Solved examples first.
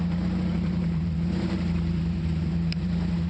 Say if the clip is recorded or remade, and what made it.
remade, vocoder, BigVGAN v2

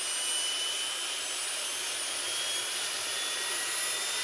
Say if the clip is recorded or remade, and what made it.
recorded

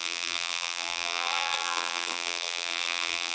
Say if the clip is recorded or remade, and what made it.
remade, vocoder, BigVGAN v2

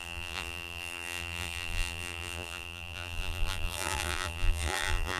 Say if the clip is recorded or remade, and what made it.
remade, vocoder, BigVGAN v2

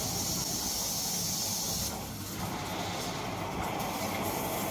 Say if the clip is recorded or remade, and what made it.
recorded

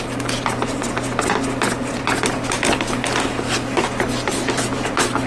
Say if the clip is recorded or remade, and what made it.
recorded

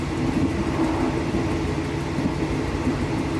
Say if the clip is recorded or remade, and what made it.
recorded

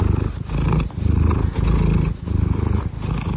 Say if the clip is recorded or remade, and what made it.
recorded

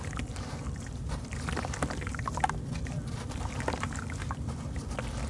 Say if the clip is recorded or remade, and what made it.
remade, vocoder, BigVGAN v2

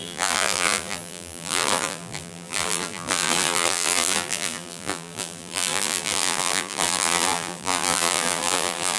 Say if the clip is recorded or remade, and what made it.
remade, vocoder, BigVGAN v2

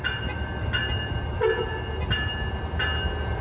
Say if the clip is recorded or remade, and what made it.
recorded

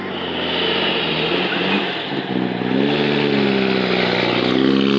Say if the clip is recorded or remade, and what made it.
recorded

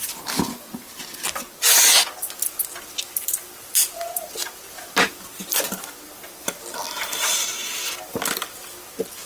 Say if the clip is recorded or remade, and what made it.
recorded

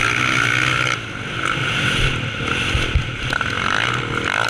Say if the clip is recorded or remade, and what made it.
recorded